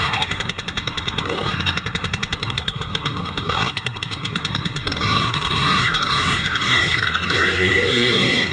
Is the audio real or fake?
fake